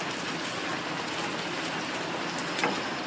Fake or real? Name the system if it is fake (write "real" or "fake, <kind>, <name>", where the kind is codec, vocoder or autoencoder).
real